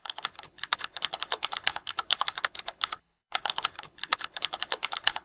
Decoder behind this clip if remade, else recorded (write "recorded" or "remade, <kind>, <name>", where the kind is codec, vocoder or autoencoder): remade, codec, HILCodec